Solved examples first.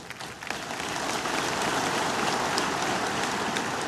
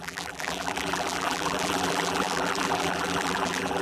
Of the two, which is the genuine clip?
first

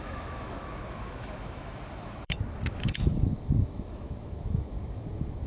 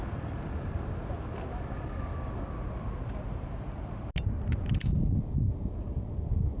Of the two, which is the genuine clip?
second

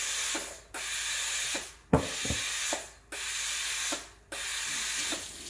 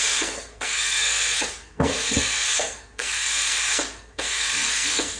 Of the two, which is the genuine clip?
first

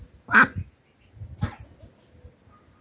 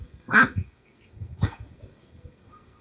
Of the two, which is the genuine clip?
first